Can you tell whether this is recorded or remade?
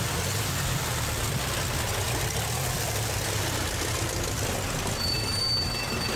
recorded